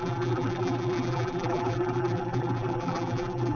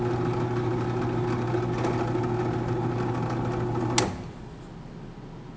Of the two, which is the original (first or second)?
second